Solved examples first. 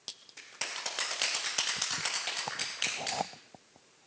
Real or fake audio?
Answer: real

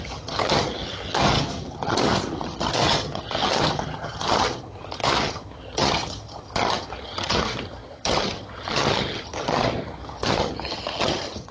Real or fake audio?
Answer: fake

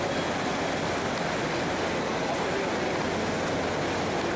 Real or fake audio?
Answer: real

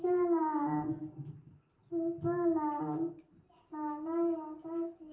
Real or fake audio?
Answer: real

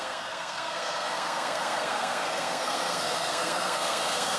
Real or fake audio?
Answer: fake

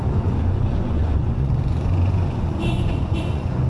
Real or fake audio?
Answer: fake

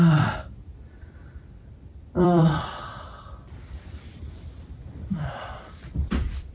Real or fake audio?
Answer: fake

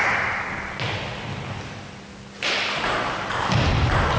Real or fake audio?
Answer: real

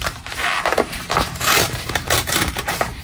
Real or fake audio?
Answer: fake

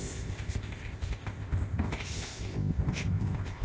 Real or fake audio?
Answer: fake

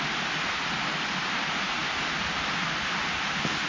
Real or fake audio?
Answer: real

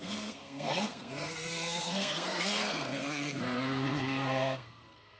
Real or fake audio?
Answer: fake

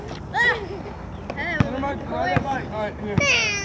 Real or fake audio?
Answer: real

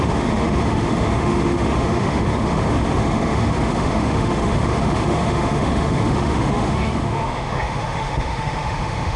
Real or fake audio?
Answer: fake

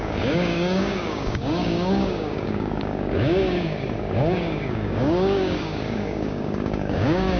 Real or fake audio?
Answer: fake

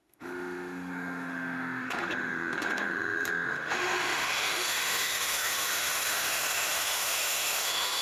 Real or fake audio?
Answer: fake